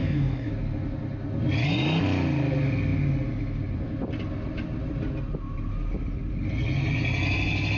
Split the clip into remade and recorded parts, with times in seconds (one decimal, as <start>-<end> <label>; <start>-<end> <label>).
0.0-0.5 remade; 0.5-7.8 recorded